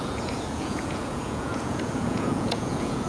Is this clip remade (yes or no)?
yes